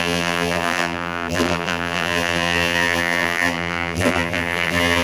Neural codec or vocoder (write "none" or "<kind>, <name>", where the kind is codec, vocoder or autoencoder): vocoder, BigVGAN v2